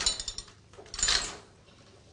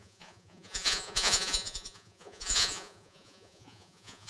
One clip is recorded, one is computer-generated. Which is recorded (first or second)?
first